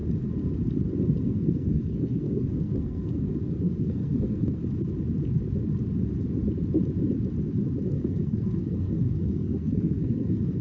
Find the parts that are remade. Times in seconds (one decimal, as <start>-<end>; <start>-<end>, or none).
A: 1.2-4.6; 7.9-10.6